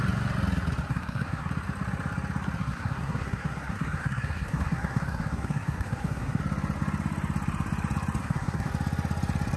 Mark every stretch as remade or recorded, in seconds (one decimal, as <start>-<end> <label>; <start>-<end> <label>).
0.0-0.9 recorded; 0.9-1.5 remade; 1.5-2.6 recorded; 2.6-6.4 remade; 6.4-8.2 recorded; 8.2-8.7 remade; 8.7-9.6 recorded